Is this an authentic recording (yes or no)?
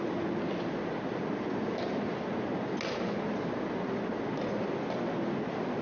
yes